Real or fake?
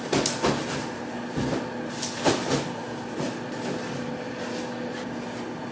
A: real